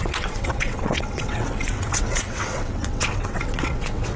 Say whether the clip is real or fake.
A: fake